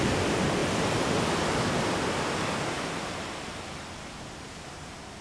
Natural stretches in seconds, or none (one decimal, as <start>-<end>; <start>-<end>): 0.0-5.2